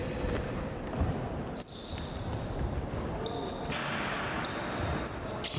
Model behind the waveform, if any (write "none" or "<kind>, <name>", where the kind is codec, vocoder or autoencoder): none